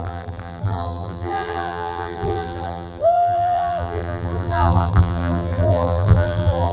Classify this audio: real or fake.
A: fake